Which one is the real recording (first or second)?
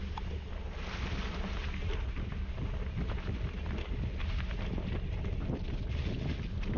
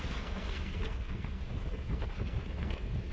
first